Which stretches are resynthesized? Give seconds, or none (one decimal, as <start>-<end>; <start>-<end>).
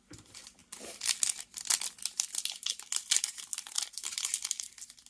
3.5-4.6